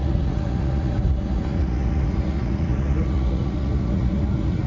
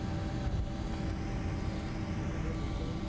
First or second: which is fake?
first